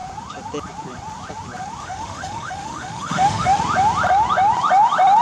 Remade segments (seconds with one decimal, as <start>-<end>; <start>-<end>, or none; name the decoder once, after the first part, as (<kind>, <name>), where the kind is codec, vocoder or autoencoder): 1.8-3.6 (autoencoder, DAC-VAE)